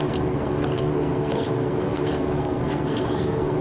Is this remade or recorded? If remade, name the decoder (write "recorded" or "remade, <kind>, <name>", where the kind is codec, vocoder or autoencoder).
remade, codec, SNAC